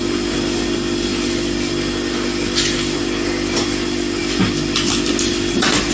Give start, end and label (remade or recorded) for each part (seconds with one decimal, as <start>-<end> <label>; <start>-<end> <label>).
0.0-5.9 recorded